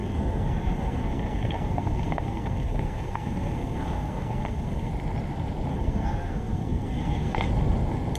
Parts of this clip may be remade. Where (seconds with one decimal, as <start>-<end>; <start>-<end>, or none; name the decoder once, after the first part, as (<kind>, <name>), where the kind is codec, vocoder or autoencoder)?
0.0-4.9 (codec, SNAC); 5.7-7.5